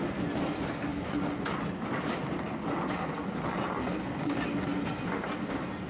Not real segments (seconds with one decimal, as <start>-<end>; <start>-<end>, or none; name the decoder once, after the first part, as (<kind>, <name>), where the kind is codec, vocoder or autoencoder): none